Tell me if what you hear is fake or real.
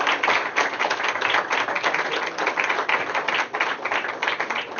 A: fake